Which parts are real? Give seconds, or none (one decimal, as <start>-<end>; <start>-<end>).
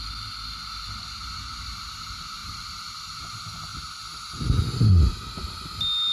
0.0-2.4; 3.0-6.1